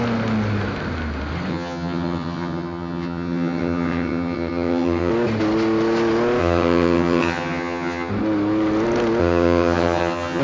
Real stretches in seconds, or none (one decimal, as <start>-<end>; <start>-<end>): 0.0-1.5; 5.1-6.4; 8.1-9.2